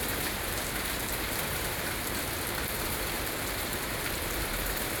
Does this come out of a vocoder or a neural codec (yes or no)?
yes